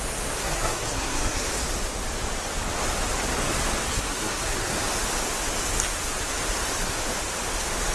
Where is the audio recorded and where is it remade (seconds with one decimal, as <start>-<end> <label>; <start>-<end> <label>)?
0.0-0.4 recorded; 0.4-1.5 remade; 1.5-3.9 recorded; 3.9-4.7 remade; 4.7-7.9 recorded